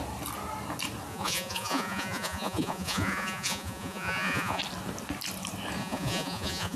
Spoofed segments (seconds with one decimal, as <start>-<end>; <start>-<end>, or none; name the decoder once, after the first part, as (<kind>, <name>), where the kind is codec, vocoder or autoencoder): 1.1-4.6 (vocoder, Vocos); 5.8-6.8